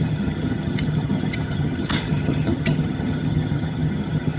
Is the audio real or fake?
fake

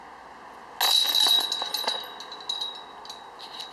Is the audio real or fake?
real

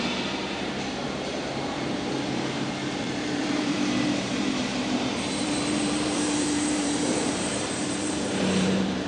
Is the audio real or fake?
fake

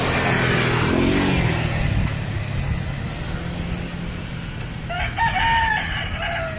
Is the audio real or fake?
real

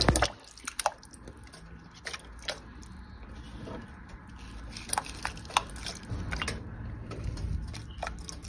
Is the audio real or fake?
real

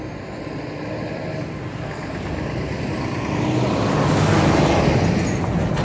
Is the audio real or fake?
real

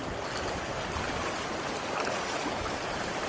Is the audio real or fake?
real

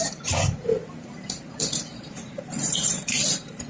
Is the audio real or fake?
fake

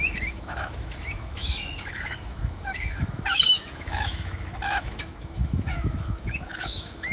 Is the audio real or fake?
fake